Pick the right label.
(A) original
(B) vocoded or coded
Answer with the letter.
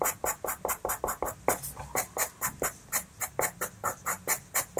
A